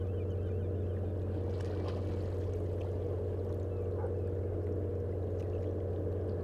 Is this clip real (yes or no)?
yes